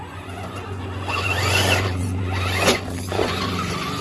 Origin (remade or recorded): remade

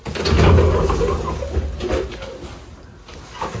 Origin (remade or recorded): recorded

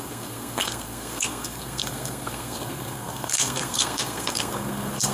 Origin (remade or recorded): remade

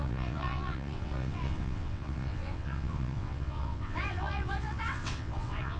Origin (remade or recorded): remade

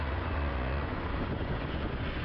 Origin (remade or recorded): remade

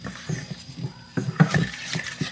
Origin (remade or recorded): recorded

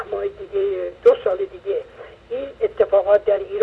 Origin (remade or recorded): remade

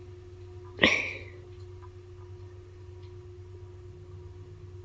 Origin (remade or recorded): recorded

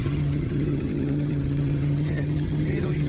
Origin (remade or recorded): remade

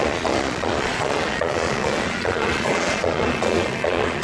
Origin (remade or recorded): remade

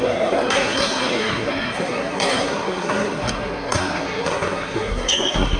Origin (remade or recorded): remade